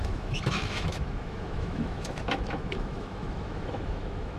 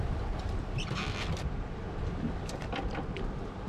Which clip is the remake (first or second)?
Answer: first